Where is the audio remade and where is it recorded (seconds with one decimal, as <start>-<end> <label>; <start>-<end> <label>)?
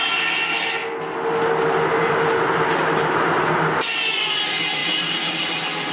0.0-4.8 recorded; 4.8-5.4 remade; 5.4-5.9 recorded